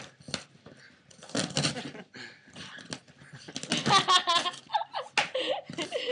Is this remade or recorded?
recorded